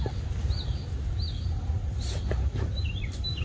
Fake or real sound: real